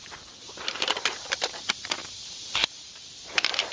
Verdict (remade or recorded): remade